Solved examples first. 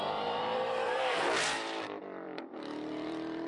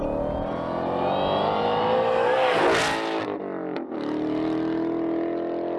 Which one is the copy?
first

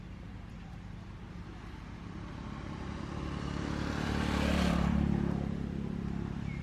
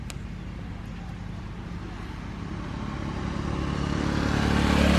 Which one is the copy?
first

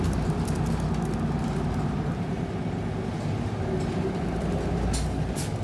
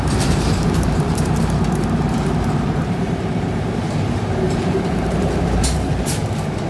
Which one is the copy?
second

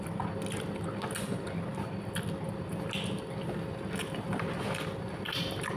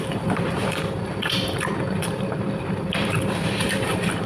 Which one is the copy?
second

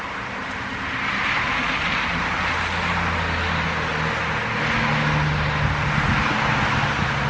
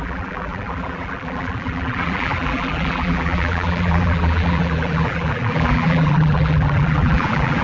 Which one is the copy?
second